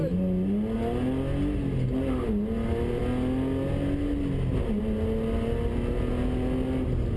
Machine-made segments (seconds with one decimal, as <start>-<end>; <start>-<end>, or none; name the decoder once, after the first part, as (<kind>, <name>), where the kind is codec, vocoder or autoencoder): none